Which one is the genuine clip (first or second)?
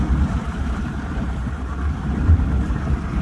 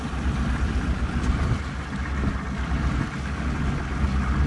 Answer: second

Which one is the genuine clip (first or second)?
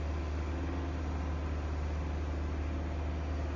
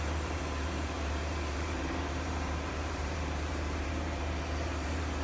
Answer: first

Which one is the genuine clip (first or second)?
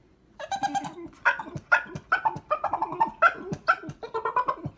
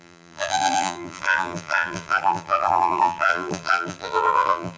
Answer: first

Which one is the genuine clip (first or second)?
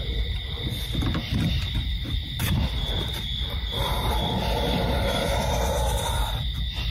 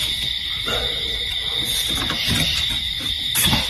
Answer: second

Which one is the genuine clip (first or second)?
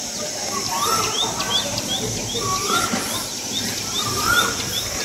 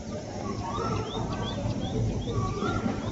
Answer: first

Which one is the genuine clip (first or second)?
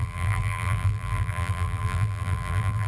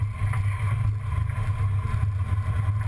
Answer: second